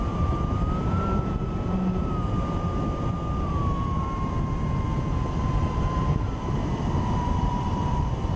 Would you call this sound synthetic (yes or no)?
yes